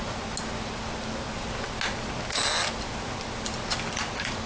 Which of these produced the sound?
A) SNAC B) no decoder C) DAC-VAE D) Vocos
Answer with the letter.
B